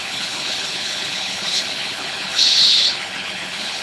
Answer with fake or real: fake